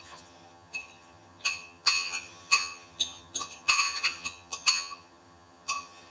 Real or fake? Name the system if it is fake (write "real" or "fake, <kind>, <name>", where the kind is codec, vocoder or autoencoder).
fake, vocoder, HiFi-GAN